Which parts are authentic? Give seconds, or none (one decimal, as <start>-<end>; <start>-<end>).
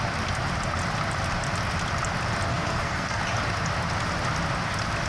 0.0-2.5; 3.2-5.1